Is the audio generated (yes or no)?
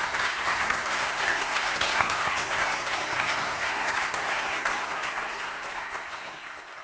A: yes